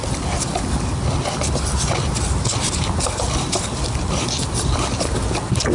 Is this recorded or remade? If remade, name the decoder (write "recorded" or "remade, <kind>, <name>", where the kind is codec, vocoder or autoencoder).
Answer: recorded